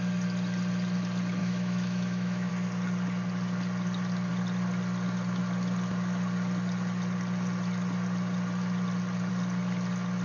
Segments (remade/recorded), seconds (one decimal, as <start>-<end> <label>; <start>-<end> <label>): 0.0-1.4 recorded; 1.4-2.5 remade; 2.5-10.2 recorded